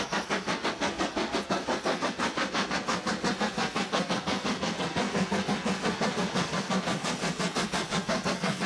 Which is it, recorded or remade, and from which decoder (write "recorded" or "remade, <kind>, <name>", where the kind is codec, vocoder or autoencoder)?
remade, codec, SNAC